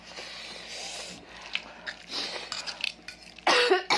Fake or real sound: real